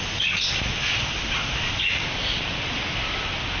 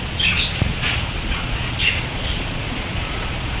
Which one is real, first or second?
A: first